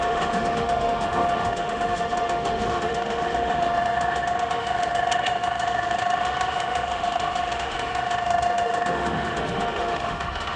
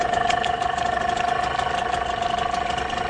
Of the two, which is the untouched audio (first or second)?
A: second